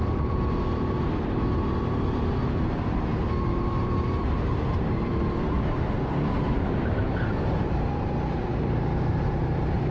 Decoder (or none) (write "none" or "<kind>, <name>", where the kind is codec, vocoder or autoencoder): vocoder, BigVGAN v2